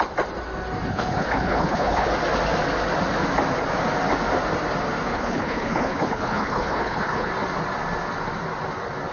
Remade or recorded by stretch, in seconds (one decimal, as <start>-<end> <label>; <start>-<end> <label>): 0.0-0.9 recorded; 0.9-2.1 remade; 2.1-5.1 recorded; 5.1-7.3 remade; 7.3-9.1 recorded

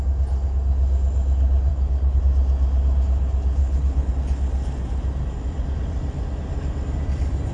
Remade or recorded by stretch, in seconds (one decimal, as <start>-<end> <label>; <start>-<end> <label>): 0.0-1.7 recorded; 1.7-2.2 remade; 2.2-3.6 recorded; 3.6-4.1 remade; 4.1-7.5 recorded

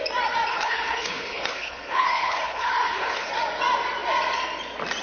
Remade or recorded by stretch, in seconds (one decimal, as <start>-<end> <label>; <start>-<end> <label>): 0.0-0.5 recorded; 0.5-3.3 remade; 3.3-5.0 recorded

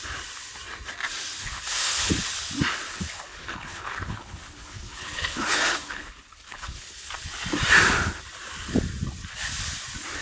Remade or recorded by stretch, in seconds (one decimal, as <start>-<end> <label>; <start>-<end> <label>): 0.0-1.4 recorded; 1.4-2.1 remade; 2.1-2.9 recorded; 2.9-7.1 remade; 7.1-10.2 recorded

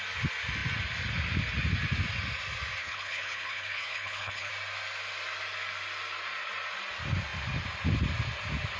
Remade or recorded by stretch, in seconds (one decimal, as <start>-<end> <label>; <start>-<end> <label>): 0.0-2.8 recorded; 2.8-4.5 remade; 4.5-8.8 recorded

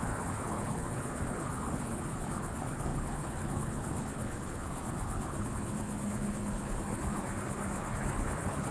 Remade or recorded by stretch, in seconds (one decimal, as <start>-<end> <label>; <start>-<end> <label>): 0.0-8.7 remade